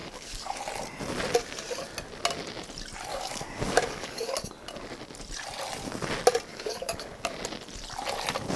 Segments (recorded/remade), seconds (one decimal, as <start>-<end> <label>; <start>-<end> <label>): 0.0-0.6 remade; 0.6-3.1 recorded; 3.1-4.5 remade; 4.5-6.5 recorded; 6.5-7.3 remade; 7.3-8.6 recorded